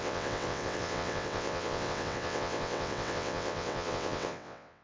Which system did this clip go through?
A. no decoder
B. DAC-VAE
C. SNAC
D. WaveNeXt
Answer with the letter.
D